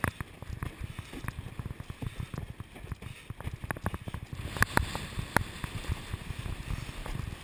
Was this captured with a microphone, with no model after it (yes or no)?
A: yes